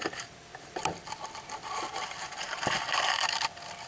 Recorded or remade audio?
recorded